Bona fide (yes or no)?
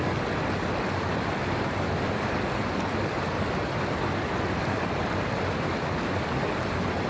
yes